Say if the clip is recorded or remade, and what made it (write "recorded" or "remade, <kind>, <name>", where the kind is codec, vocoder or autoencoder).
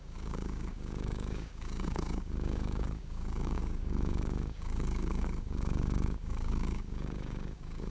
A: remade, codec, DAC